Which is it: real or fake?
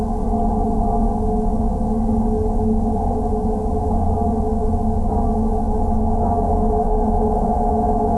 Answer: real